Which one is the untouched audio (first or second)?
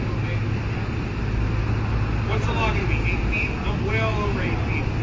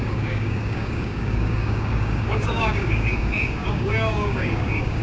first